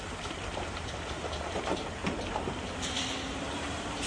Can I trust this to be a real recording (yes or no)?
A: no